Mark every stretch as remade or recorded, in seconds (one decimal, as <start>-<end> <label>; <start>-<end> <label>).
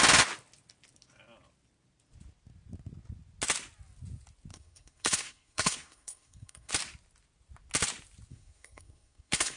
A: 0.0-4.5 recorded; 4.5-6.7 remade; 6.7-8.3 recorded; 8.3-9.6 remade